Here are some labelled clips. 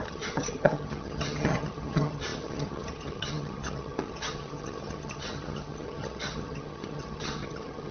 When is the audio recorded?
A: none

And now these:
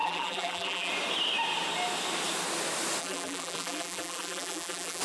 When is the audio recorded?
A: 0.9-3.0

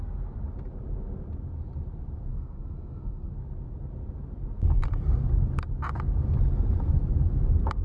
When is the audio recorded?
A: 0.0-2.3; 3.3-7.8

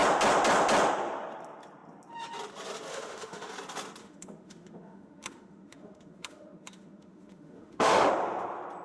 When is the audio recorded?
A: 0.0-2.9; 3.5-4.0; 8.1-8.8

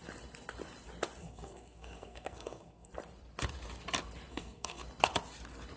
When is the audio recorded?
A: 0.0-1.2; 2.9-4.3; 4.8-5.8

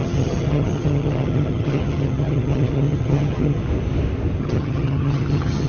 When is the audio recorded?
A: 3.6-4.4

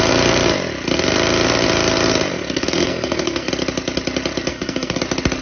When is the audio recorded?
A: 0.0-2.3; 3.5-4.5; 5.0-5.4

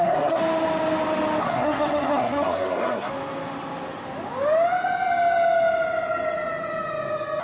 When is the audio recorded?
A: 0.4-1.4; 3.1-7.4